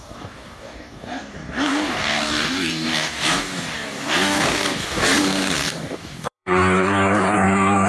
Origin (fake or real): fake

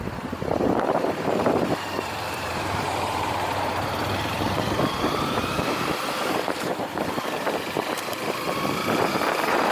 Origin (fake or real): fake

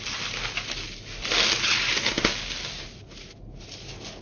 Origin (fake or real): real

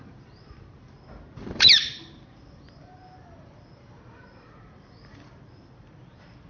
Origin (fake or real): fake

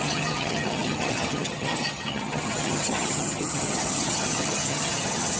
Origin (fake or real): fake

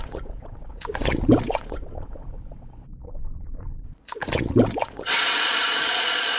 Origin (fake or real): fake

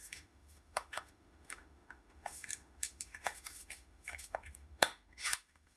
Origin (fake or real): fake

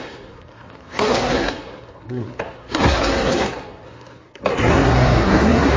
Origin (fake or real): fake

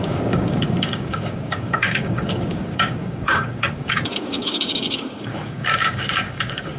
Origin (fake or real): fake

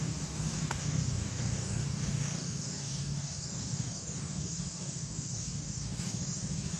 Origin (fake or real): fake